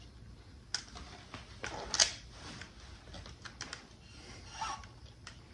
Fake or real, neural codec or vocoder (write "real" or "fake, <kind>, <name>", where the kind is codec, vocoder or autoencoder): real